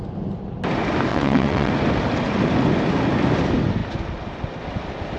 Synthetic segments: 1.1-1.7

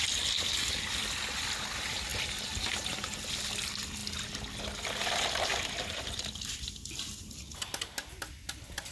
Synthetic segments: none

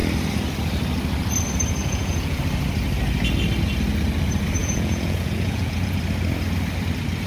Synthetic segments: 1.8-2.4; 4.6-6.0

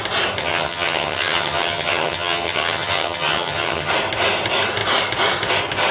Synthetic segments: 0.4-3.9

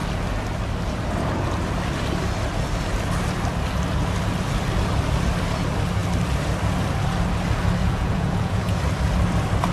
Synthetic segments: 7.8-8.8